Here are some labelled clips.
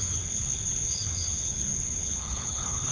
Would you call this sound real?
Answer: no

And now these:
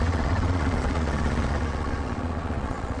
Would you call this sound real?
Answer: no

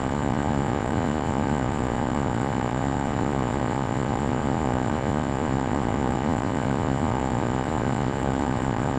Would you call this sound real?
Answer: no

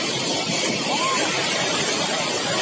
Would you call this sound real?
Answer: yes